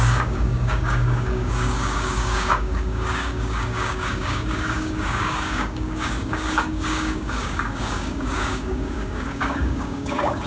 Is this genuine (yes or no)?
no